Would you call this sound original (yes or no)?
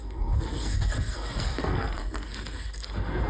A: no